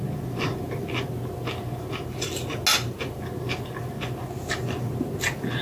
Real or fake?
real